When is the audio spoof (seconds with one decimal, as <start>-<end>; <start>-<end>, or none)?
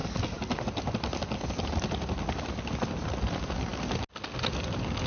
none